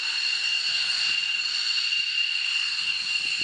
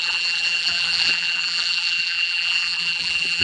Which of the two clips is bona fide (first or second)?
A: first